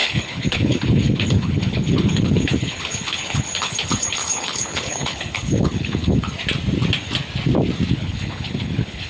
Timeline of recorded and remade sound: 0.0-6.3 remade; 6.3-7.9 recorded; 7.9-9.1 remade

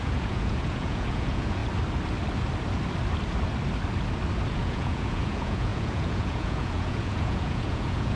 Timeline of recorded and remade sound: 0.0-1.6 remade; 1.6-4.5 recorded; 4.5-8.2 remade

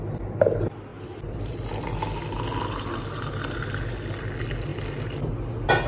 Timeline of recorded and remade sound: 0.0-0.9 recorded; 0.9-1.7 remade; 1.7-5.9 recorded

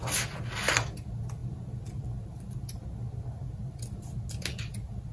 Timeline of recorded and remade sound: 0.0-5.1 recorded